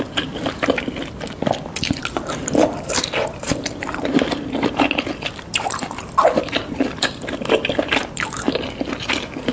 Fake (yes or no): yes